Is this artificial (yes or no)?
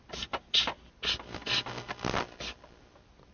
no